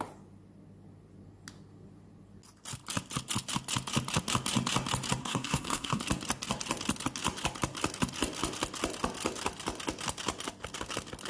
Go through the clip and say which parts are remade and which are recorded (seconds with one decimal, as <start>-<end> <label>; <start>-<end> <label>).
0.0-5.2 recorded; 5.2-6.0 remade; 6.0-11.3 recorded